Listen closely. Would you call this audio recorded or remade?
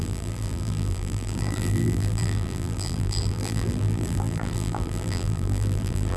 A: remade